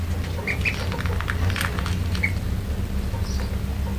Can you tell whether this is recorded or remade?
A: recorded